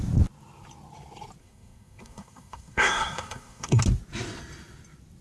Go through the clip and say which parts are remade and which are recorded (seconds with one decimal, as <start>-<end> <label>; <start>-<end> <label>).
0.0-1.4 recorded; 1.4-3.8 remade; 3.8-5.2 recorded

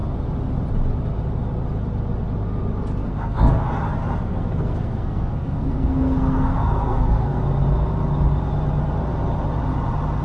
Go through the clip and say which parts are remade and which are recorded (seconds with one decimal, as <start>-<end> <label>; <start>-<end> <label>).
0.0-3.0 recorded; 3.0-3.7 remade; 3.7-4.3 recorded; 4.3-7.4 remade; 7.4-10.2 recorded